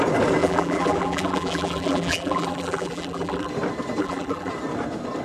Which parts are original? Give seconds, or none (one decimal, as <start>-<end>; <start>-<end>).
0.0-0.4; 3.5-4.0; 4.5-5.2